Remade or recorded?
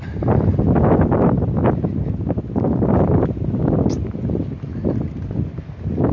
recorded